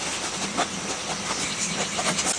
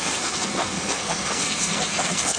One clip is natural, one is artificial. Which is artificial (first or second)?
second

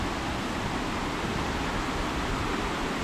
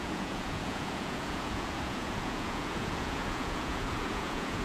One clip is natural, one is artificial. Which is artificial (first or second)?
second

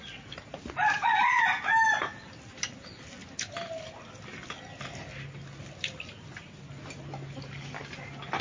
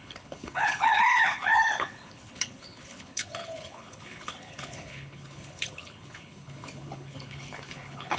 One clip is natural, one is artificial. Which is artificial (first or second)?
second